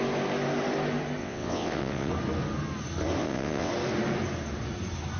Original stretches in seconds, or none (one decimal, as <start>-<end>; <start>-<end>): 0.0-1.2; 2.1-3.2; 3.7-5.2